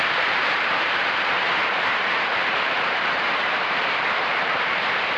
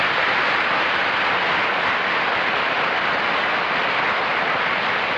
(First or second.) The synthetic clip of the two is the first